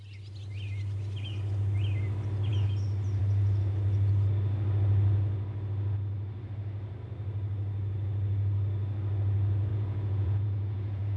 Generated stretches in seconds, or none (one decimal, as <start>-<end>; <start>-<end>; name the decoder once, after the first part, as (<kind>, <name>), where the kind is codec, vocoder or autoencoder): 9.7-11.2 (vocoder, Vocos)

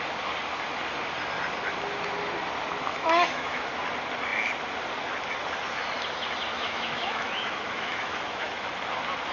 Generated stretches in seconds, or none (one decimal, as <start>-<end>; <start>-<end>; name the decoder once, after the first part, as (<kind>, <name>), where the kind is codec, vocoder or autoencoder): 2.9-3.7 (autoencoder, DAC-VAE); 6.5-8.7

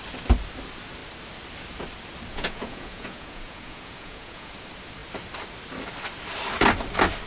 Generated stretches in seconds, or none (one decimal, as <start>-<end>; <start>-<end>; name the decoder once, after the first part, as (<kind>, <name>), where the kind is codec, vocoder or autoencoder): 2.3-4.5 (vocoder, Vocos)

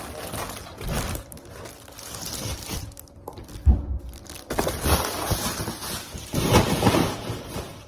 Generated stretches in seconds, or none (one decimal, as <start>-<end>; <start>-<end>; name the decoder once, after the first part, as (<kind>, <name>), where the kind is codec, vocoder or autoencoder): none

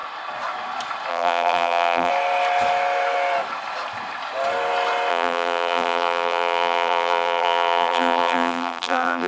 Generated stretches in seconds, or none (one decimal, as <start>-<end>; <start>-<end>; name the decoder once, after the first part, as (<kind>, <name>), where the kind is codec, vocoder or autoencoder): 1.1-2.1 (vocoder, BigVGAN v2); 5.1-9.3

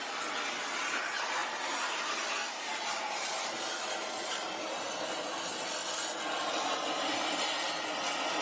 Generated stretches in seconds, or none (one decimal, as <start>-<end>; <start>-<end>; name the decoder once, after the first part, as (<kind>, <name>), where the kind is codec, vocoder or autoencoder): none